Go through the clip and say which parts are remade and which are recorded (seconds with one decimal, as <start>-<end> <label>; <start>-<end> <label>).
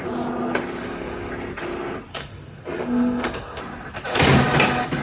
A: 0.0-0.8 recorded; 0.8-1.3 remade; 1.3-2.1 recorded; 2.1-3.6 remade; 3.6-5.0 recorded